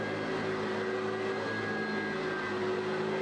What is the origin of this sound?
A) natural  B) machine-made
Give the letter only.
A